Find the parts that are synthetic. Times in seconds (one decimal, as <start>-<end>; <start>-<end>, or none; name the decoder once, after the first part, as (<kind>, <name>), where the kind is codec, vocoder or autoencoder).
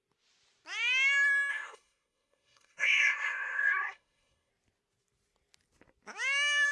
1.5-4.5 (codec, SNAC)